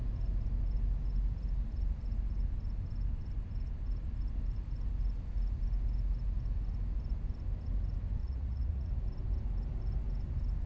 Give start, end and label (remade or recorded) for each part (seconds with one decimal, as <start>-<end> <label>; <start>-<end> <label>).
0.0-8.2 recorded; 8.2-8.9 remade; 8.9-10.7 recorded